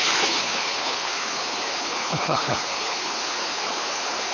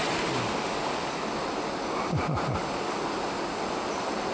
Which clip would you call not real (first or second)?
first